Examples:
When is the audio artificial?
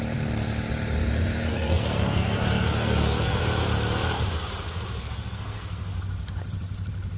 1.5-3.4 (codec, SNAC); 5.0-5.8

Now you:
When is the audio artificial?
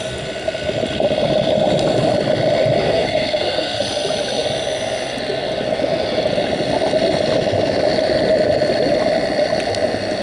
2.8-3.8 (codec, SNAC)